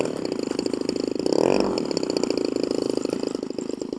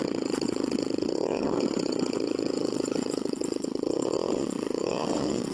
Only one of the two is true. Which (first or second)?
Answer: first